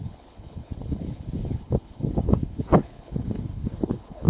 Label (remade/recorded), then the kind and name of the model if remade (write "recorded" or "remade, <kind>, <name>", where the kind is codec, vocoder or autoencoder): remade, codec, HILCodec